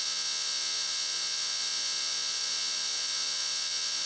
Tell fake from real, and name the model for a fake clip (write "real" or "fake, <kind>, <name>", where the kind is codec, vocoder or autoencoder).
fake, vocoder, Vocos